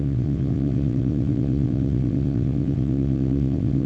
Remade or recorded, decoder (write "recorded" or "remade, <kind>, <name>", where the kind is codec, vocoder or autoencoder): remade, vocoder, WaveNeXt